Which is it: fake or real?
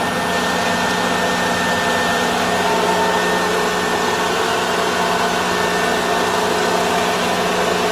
real